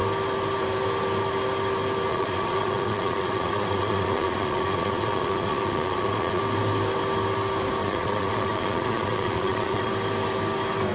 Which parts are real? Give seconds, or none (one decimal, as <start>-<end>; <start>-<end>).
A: 0.0-2.1; 6.4-7.8; 9.9-10.9